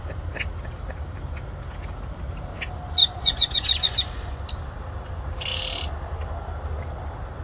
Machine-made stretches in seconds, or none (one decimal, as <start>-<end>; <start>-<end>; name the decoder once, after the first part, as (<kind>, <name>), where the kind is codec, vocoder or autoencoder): 3.0-4.5 (vocoder, Vocos)